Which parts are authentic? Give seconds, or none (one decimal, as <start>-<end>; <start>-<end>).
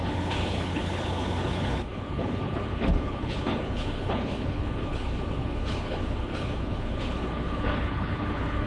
none